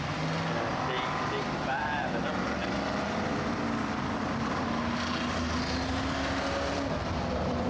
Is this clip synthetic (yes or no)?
no